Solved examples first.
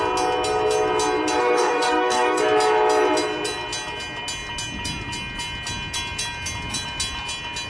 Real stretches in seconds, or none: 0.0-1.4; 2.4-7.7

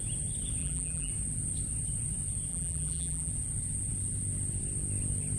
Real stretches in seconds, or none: 0.0-0.6; 1.1-2.5; 3.3-5.4

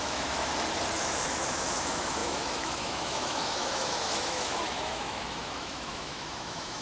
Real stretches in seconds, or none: 0.5-1.0

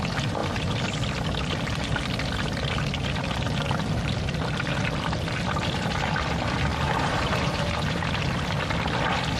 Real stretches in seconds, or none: 0.0-6.7; 7.9-9.4

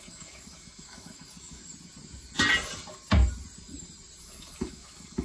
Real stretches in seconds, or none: 1.6-4.2

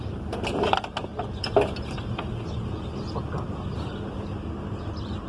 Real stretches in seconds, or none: 0.0-5.3

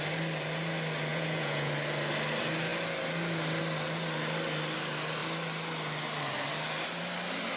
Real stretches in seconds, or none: 0.0-1.1; 1.7-7.6

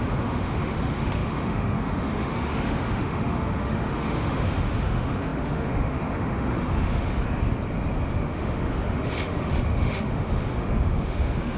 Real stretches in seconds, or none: 7.1-8.1